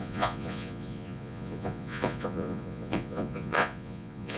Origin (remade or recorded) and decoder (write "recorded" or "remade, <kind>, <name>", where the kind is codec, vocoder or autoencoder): remade, vocoder, Vocos